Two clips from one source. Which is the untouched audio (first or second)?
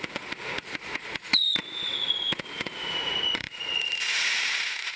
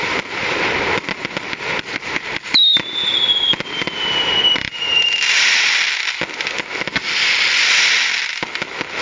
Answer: second